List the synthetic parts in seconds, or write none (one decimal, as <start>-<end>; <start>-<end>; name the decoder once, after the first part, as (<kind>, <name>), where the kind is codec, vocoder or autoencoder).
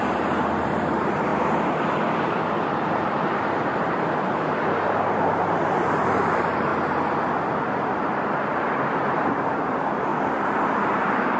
0.0-1.3 (vocoder, BigVGAN v2); 2.2-6.7; 9.1-10.1